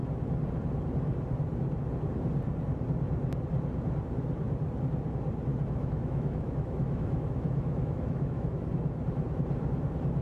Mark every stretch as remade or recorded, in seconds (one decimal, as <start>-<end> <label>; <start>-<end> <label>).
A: 0.0-5.5 recorded; 5.5-8.7 remade; 8.7-10.2 recorded